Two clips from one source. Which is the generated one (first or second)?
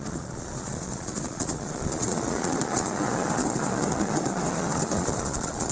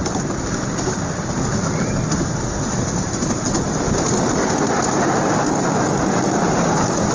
first